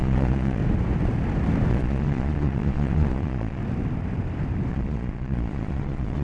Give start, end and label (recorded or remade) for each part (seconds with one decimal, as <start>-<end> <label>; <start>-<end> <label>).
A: 0.0-0.6 remade; 0.6-1.7 recorded; 1.7-3.6 remade; 3.6-4.7 recorded; 4.7-6.2 remade